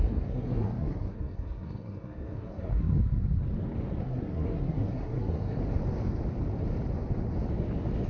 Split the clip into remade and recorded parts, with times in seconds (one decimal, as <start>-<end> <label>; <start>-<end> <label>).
0.0-2.9 remade; 2.9-4.0 recorded; 4.0-5.6 remade; 5.6-8.1 recorded